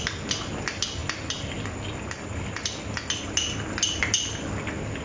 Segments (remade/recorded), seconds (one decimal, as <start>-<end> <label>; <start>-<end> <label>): 0.0-5.0 recorded